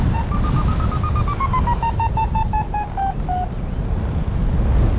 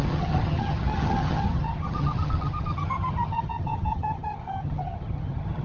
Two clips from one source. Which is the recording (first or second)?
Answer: first